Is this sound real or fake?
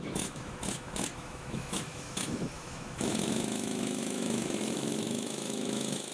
fake